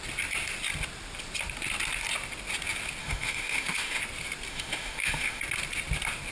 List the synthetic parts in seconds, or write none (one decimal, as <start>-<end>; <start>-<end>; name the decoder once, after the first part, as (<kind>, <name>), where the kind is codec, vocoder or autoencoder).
3.0-4.0 (autoencoder, DAC-VAE); 4.5-5.4